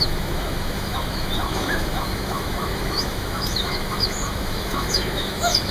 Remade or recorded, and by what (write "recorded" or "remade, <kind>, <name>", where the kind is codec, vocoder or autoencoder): remade, autoencoder, DAC-VAE